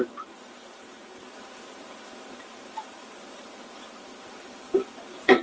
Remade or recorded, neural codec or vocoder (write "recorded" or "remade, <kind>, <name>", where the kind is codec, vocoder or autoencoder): remade, vocoder, BigVGAN v2